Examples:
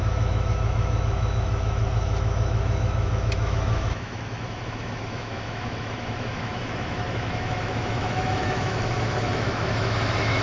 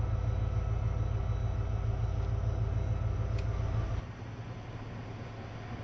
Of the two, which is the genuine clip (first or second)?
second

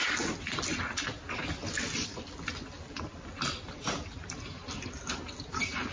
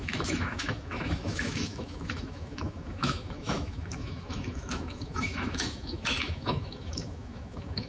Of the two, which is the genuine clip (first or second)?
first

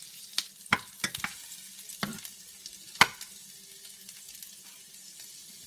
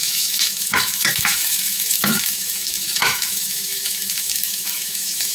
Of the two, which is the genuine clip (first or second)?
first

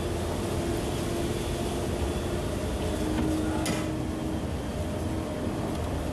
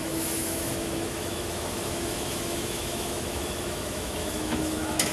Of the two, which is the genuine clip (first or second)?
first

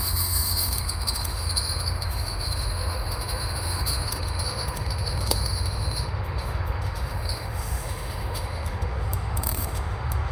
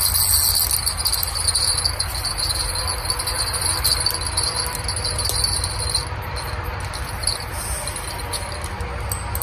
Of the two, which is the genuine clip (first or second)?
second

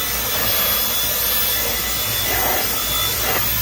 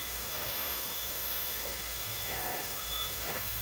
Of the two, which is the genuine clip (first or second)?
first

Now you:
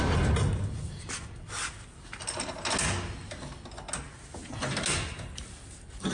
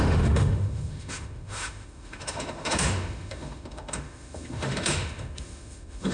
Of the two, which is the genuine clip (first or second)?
first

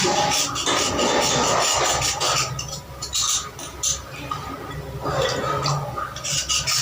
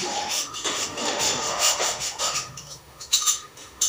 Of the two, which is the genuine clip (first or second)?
first